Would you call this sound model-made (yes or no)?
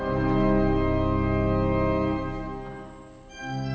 no